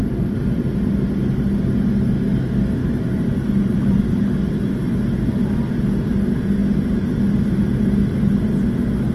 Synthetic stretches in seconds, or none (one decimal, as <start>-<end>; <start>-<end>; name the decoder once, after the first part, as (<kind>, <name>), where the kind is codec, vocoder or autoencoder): 2.8-4.9 (vocoder, BigVGAN v2)